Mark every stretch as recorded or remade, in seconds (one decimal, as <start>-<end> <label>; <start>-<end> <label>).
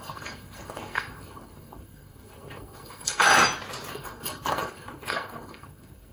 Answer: 0.0-3.3 remade; 3.3-3.9 recorded; 3.9-6.1 remade